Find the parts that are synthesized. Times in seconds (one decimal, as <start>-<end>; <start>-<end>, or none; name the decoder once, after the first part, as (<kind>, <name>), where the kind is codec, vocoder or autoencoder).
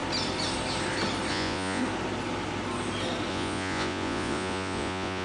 1.3-1.8 (vocoder, Vocos); 3.3-5.2